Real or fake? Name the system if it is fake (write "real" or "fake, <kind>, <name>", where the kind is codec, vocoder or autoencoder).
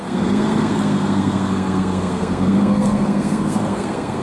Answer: fake, codec, SNAC